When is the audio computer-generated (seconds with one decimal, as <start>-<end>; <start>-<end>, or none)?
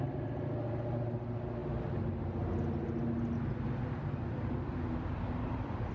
none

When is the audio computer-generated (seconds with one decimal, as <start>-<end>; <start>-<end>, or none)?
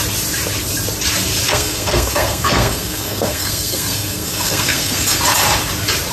1.5-5.2